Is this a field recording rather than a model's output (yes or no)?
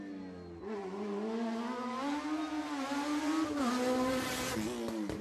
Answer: yes